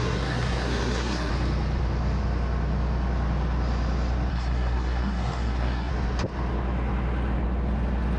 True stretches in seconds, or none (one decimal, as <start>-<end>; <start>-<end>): 1.3-4.3; 5.9-8.2